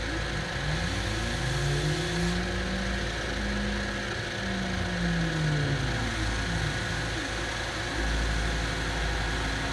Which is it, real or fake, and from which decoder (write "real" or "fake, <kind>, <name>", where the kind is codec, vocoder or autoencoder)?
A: real